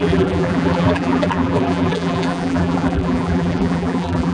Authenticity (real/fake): fake